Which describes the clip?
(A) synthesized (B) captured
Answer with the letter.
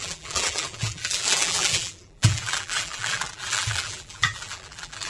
A